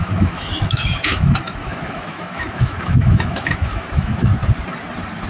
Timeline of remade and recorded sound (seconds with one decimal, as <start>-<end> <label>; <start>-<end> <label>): 0.0-4.3 remade; 4.3-5.3 recorded